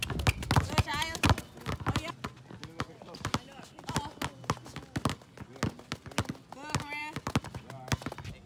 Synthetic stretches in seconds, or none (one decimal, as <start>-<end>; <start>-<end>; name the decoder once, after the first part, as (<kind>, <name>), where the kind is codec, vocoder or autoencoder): none